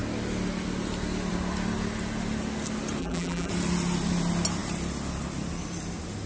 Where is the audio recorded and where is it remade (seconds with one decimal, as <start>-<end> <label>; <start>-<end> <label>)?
0.0-3.0 recorded; 3.0-3.5 remade; 3.5-6.3 recorded